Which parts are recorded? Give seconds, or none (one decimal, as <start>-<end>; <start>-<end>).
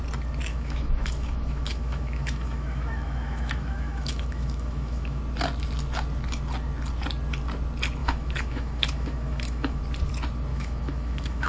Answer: 0.0-0.5; 5.2-8.0; 9.8-10.5